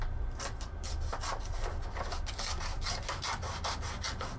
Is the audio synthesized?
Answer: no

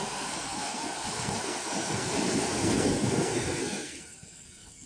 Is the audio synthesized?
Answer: yes